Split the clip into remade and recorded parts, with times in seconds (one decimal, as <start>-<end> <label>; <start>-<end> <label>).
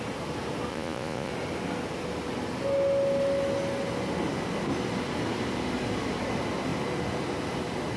0.0-0.7 recorded; 0.7-1.3 remade; 1.3-8.0 recorded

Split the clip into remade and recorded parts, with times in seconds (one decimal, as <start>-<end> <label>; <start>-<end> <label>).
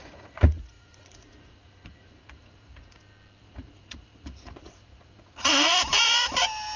0.0-3.0 remade; 3.0-3.4 recorded; 3.4-5.7 remade; 5.7-6.8 recorded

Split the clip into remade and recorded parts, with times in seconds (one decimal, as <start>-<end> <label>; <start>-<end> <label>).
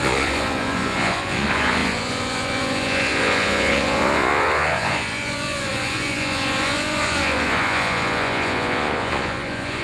0.0-9.8 remade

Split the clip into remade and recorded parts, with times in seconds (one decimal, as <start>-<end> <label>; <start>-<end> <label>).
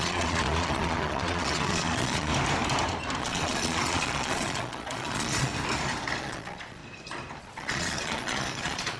0.0-2.3 remade; 2.3-3.2 recorded; 3.2-5.5 remade; 5.5-6.2 recorded; 6.2-6.8 remade; 6.8-7.4 recorded; 7.4-9.0 remade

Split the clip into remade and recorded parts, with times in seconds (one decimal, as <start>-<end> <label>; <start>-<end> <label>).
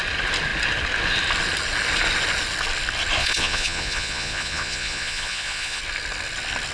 0.0-3.2 recorded; 3.2-5.8 remade; 5.8-6.7 recorded